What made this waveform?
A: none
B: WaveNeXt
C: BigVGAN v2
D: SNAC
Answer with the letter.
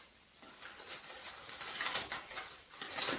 A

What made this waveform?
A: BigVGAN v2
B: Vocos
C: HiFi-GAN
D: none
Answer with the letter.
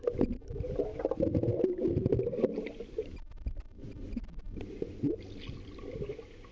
D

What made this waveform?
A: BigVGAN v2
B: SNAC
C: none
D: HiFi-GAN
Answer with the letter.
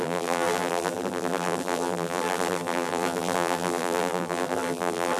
A